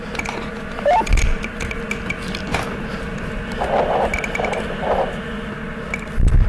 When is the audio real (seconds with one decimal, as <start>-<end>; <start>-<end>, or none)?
0.0-6.5